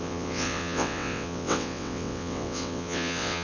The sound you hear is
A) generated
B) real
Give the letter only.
A